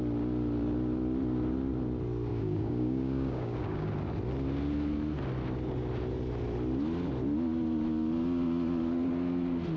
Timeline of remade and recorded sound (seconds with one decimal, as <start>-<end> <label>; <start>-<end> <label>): 0.0-2.3 recorded; 2.3-3.9 remade; 3.9-9.8 recorded